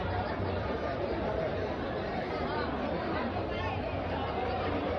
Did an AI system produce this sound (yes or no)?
yes